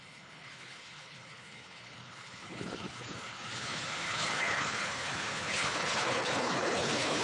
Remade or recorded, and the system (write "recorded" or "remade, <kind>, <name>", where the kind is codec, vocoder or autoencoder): remade, codec, HILCodec